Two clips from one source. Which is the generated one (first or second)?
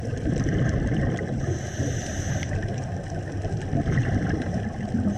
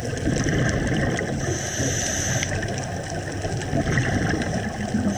first